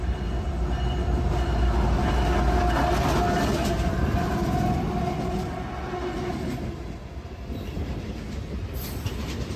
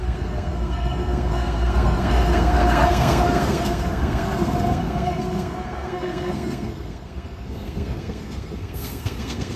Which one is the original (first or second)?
first